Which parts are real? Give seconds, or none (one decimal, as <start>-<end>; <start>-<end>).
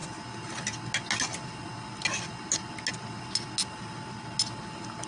0.0-5.1